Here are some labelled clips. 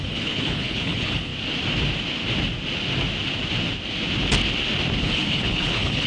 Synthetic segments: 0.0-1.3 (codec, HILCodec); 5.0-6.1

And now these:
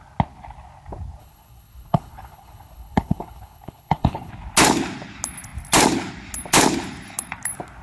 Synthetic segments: 1.2-4.3 (codec, HILCodec)

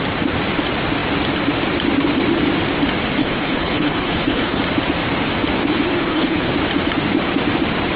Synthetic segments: 3.2-4.6 (codec, HILCodec); 5.7-6.5